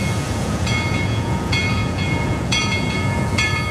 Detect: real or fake fake